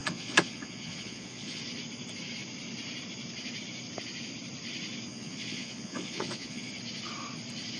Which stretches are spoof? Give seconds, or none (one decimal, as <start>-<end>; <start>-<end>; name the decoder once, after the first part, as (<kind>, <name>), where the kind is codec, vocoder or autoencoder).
0.0-1.6 (vocoder, Vocos); 5.1-6.7